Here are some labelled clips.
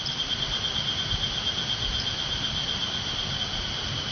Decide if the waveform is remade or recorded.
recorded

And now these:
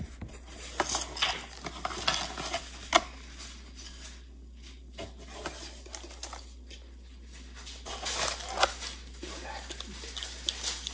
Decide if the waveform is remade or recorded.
recorded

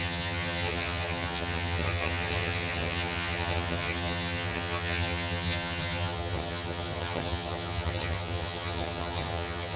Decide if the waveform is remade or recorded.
remade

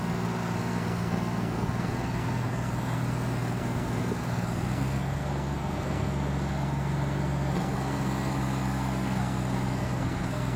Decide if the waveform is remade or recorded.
remade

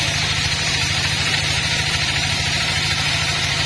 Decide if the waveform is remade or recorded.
remade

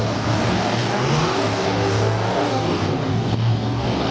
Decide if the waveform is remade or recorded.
remade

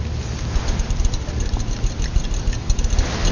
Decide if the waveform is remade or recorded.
recorded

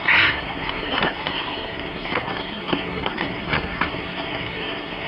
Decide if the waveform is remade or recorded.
remade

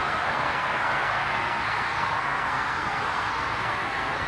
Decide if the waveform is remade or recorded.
remade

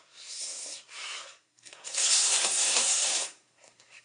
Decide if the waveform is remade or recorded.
remade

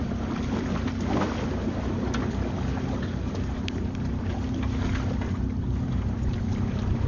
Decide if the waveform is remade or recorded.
recorded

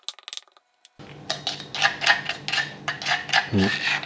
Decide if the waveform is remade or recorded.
recorded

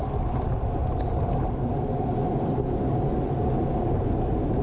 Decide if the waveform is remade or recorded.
recorded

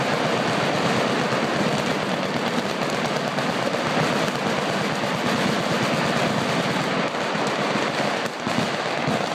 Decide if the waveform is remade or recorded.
recorded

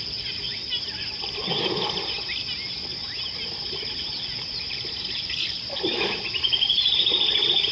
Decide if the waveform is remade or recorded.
recorded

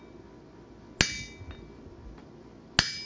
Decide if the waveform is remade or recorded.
recorded